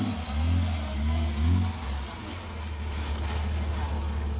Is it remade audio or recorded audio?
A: recorded